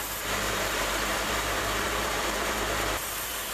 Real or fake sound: fake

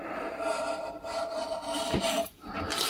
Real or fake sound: real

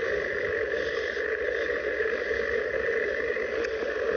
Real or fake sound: real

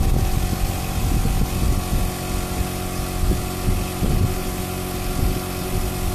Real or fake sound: real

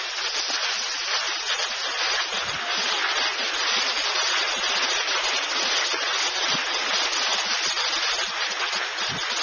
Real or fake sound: real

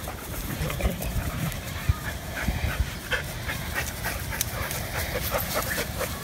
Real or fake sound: fake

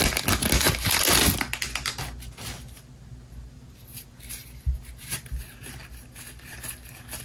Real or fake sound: real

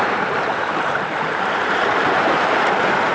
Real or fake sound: fake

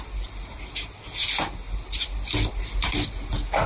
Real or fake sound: real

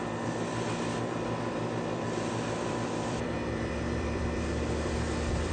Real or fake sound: fake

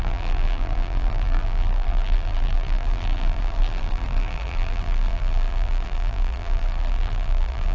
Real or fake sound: fake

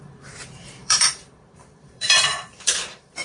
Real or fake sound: fake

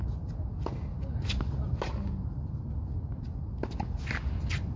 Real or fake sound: real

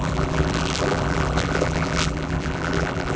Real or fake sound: fake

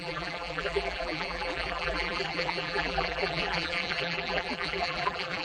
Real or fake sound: fake